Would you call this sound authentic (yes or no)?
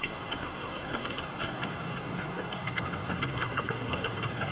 no